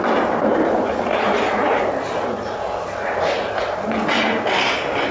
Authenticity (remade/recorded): recorded